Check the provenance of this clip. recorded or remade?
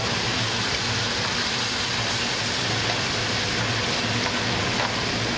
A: recorded